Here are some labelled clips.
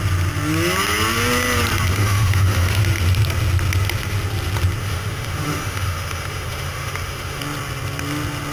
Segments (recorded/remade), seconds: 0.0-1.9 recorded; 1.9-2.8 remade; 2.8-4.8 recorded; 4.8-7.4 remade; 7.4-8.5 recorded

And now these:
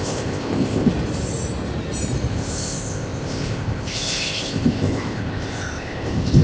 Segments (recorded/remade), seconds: 0.0-0.9 remade; 0.9-2.3 recorded; 2.3-6.4 remade